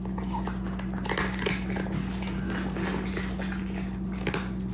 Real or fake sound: real